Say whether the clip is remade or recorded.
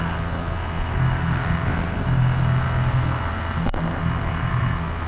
remade